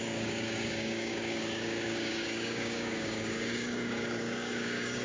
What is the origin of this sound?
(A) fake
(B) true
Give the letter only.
A